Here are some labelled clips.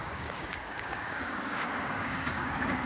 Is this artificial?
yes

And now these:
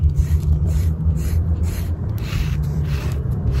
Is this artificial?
yes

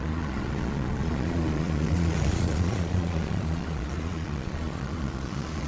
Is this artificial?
yes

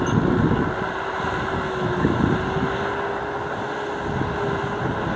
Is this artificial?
no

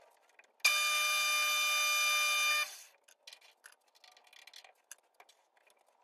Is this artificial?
no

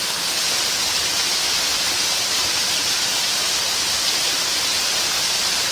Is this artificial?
yes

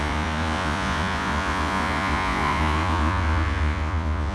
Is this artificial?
yes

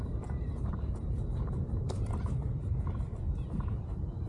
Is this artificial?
yes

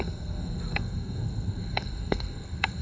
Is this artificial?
yes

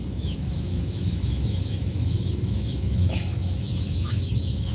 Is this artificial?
yes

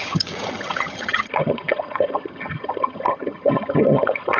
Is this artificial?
yes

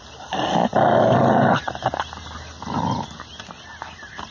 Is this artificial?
no